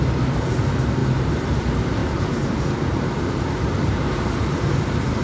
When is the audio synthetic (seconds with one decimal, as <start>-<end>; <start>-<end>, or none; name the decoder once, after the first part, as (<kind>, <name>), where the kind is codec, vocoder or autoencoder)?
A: 1.0-1.6 (vocoder, BigVGAN v2); 2.0-4.8

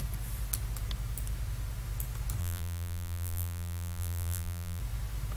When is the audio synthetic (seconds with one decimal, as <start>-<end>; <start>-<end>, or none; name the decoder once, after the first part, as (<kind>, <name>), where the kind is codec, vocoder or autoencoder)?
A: 2.4-4.8 (vocoder, BigVGAN v2)